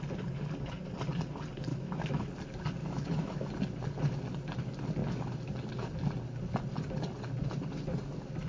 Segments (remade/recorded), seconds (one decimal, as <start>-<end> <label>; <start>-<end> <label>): 0.0-1.7 recorded; 1.7-2.3 remade; 2.3-2.8 recorded; 2.8-3.5 remade; 3.5-8.5 recorded